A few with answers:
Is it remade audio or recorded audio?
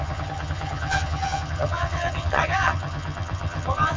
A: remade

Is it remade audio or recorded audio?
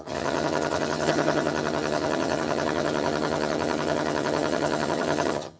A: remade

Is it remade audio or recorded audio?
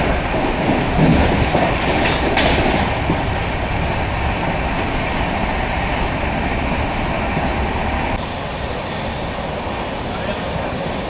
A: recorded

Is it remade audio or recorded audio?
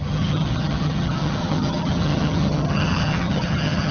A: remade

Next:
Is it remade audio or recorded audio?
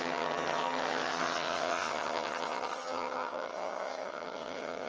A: remade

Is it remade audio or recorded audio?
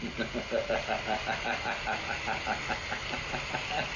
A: recorded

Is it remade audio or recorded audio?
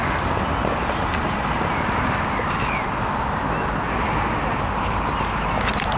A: recorded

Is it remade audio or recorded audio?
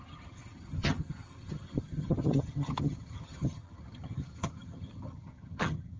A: remade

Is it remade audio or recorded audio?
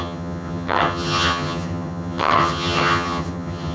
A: remade